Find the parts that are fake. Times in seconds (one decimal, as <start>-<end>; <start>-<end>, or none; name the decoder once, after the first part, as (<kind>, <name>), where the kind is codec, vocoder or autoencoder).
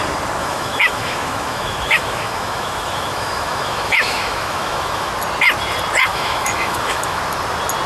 0.4-5.1 (autoencoder, DAC-VAE); 6.1-7.2